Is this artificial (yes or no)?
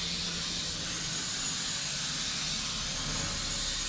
no